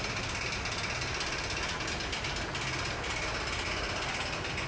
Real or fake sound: real